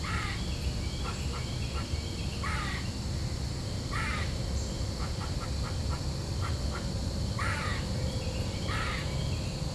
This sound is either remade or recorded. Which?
recorded